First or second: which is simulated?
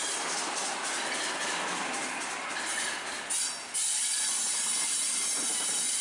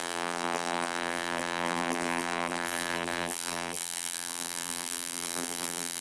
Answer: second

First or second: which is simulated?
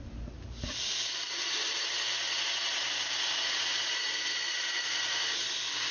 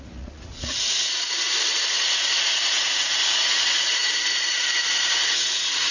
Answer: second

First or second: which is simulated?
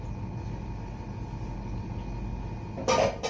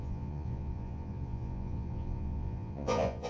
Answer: second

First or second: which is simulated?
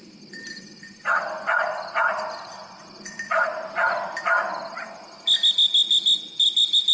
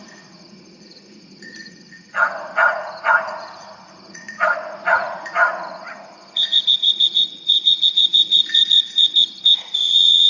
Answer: second